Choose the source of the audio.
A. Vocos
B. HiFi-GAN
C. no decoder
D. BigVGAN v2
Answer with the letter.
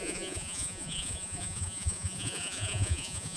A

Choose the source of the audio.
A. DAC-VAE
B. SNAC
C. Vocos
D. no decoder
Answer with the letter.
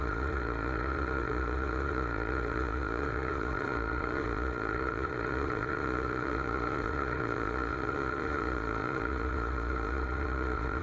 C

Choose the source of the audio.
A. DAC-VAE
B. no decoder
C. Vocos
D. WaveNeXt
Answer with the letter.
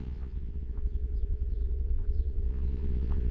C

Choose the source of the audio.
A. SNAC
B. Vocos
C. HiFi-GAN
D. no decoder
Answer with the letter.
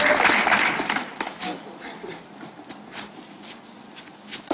D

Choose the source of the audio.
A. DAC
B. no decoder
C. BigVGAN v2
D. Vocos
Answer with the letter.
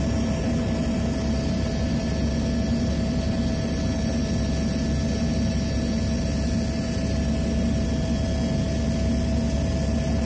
B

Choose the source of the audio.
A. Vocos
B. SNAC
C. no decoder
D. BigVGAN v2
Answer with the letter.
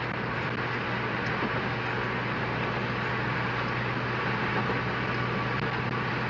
C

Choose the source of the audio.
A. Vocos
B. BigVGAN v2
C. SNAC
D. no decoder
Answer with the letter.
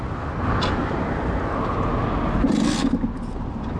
D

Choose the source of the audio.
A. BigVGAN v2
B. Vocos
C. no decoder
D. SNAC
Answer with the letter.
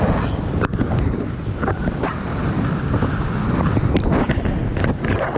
C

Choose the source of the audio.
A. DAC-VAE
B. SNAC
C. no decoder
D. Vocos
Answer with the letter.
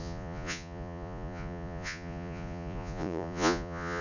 D